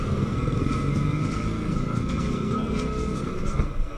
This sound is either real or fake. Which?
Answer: fake